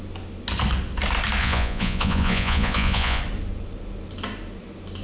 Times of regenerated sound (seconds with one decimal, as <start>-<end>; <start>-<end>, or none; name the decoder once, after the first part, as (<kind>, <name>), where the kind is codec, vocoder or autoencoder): 1.4-3.2 (vocoder, Vocos)